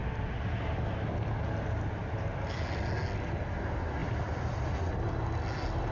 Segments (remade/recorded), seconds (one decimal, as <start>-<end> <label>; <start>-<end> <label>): 0.0-5.9 recorded